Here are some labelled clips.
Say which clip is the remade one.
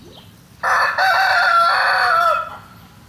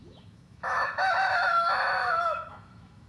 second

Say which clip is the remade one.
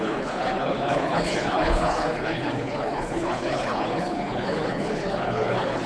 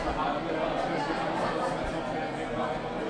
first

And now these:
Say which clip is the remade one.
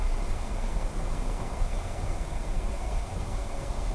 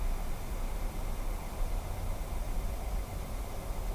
first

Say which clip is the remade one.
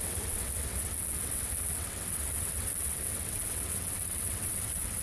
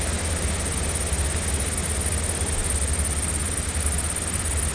first